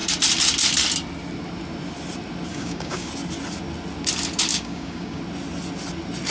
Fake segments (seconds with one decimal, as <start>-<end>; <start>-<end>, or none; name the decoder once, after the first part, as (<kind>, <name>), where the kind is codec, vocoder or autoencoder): 2.5-3.1 (codec, DAC); 4.5-5.2